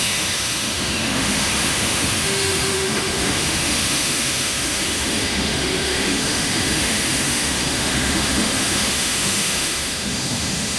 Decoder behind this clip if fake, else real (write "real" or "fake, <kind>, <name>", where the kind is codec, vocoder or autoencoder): fake, autoencoder, DAC-VAE